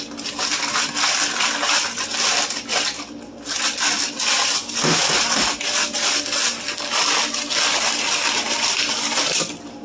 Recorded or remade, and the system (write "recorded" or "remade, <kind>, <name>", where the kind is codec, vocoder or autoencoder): recorded